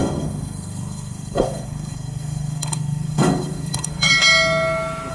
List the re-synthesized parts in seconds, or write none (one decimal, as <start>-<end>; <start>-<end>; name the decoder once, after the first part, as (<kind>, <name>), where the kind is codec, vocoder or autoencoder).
0.0-4.1 (codec, SNAC)